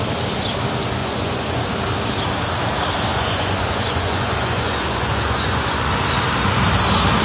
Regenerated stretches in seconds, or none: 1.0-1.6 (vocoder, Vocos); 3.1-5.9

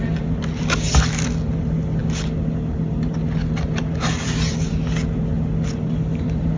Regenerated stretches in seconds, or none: none

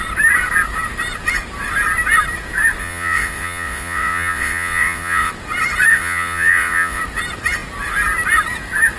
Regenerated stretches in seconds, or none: 2.8-5.3 (vocoder, Vocos); 5.9-7.0

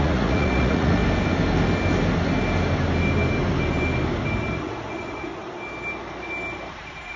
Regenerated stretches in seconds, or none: 0.0-1.0 (vocoder, Vocos); 4.6-5.3; 6.7-7.2